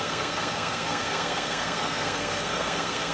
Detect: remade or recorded remade